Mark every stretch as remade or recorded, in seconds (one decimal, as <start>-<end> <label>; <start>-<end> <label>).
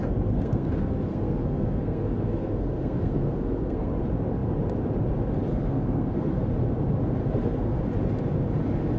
0.0-3.9 remade; 3.9-5.5 recorded; 5.5-6.5 remade; 6.5-7.2 recorded; 7.2-7.8 remade; 7.8-9.0 recorded